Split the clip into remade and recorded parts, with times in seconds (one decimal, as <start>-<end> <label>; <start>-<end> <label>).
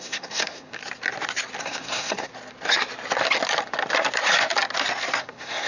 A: 0.0-0.8 remade; 0.8-1.6 recorded; 1.6-2.3 remade; 2.3-5.2 recorded; 5.2-5.7 remade